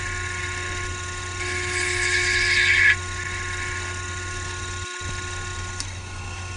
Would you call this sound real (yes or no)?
yes